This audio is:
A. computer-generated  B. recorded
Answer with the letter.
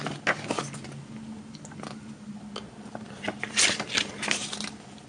B